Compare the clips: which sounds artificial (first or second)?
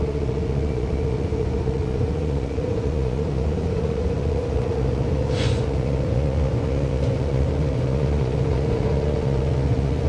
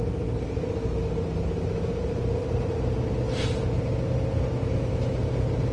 first